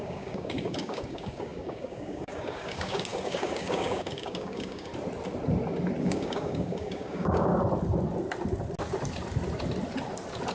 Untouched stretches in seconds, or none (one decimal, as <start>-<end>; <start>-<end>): 4.9-6.0; 7.5-10.5